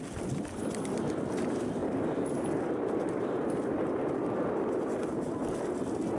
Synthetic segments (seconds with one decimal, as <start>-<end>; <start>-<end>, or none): none